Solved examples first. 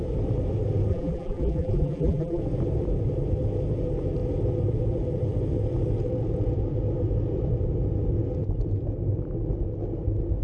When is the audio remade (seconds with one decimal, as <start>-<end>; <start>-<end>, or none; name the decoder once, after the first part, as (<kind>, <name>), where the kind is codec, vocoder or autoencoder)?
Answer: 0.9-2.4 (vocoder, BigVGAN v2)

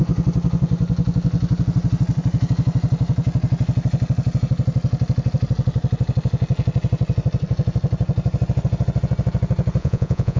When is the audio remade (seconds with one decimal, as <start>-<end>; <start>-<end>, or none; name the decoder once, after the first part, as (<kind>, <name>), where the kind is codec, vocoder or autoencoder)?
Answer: 9.8-10.4 (vocoder, Vocos)

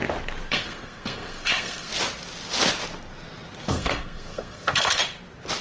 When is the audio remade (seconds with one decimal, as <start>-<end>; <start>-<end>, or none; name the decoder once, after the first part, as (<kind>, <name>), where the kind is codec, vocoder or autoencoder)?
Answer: 0.5-1.9 (codec, SNAC); 3.7-5.0

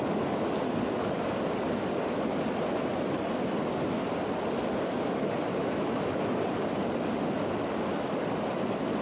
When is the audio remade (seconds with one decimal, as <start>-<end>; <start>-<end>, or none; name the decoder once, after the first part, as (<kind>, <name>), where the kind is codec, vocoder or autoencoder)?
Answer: 5.5-6.4 (autoencoder, DAC-VAE)

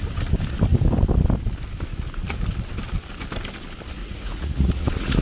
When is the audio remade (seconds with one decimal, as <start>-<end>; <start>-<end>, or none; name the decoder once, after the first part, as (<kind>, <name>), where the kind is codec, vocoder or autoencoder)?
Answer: 4.0-5.2 (vocoder, Vocos)

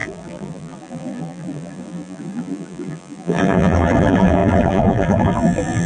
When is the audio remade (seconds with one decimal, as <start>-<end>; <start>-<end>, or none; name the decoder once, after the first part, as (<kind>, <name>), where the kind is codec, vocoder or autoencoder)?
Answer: 0.0-5.9 (vocoder, BigVGAN v2)

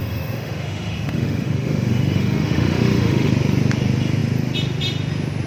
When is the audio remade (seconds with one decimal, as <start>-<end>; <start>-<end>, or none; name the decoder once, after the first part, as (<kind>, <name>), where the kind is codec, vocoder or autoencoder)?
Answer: 0.0-3.3 (autoencoder, DAC-VAE)

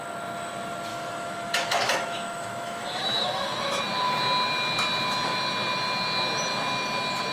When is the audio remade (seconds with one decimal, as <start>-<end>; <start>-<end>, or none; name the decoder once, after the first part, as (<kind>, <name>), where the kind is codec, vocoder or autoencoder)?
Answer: 0.9-3.8 (autoencoder, DAC-VAE)